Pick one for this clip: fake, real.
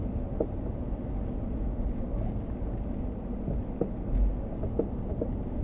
real